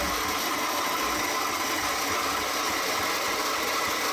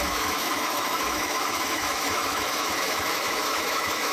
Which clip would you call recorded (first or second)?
first